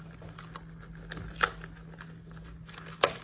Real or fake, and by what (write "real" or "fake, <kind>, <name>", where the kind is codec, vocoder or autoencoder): real